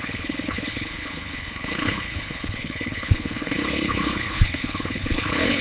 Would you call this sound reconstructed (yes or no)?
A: yes